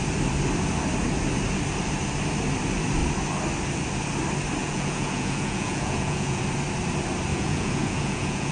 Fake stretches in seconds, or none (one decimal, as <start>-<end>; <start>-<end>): 4.6-6.4; 7.3-8.5